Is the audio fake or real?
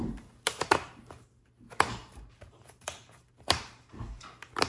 fake